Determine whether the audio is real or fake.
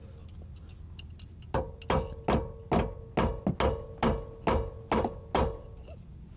real